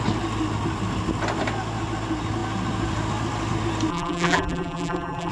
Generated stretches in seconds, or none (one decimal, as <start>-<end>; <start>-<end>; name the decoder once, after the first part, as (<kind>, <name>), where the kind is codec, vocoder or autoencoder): 3.9-5.3 (vocoder, BigVGAN v2)